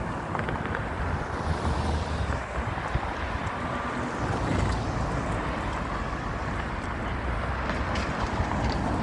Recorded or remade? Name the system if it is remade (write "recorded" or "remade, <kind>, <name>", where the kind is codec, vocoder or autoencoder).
recorded